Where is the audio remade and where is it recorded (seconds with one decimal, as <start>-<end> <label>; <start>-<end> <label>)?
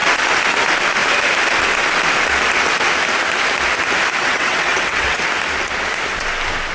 0.0-4.2 recorded; 4.2-5.2 remade; 5.2-6.7 recorded